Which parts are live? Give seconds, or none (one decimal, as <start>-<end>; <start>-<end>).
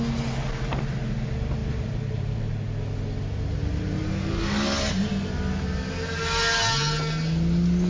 0.0-1.6; 2.5-3.6; 5.1-7.9